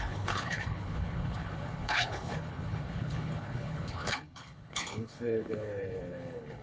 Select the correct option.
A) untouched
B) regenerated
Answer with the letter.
B